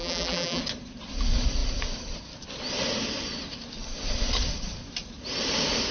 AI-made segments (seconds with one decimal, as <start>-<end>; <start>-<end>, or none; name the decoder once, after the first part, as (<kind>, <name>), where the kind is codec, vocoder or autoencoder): 0.0-0.6 (vocoder, BigVGAN v2)